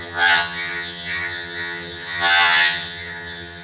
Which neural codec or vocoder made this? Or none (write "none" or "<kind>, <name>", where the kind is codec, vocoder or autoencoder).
vocoder, HiFi-GAN